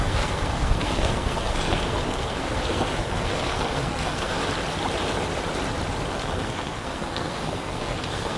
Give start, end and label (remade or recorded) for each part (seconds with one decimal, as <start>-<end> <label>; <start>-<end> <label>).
0.0-4.4 remade; 4.4-6.1 recorded; 6.1-8.4 remade